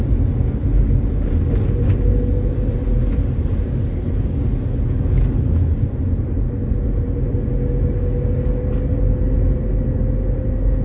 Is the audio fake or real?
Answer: real